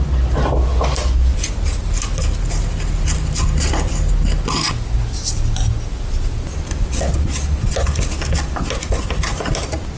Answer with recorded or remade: recorded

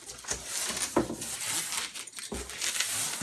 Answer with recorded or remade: recorded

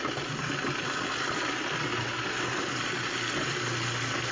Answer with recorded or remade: recorded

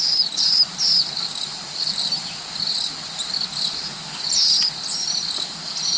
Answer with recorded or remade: recorded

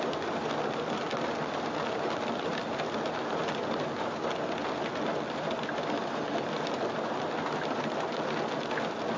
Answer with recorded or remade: recorded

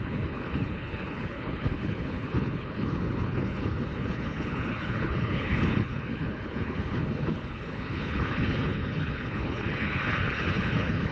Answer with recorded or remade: remade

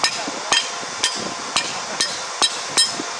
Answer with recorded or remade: recorded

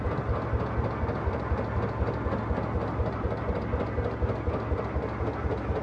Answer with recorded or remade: recorded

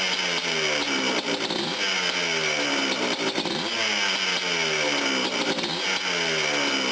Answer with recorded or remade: recorded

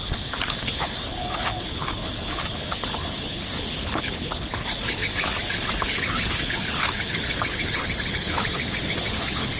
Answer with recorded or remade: remade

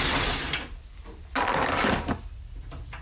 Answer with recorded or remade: recorded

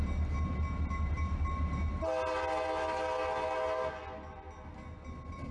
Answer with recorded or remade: recorded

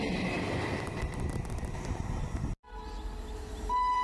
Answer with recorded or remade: recorded